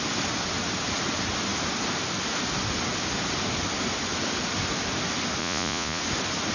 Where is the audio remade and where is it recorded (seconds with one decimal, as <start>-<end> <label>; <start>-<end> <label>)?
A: 0.0-5.4 recorded; 5.4-6.0 remade; 6.0-6.5 recorded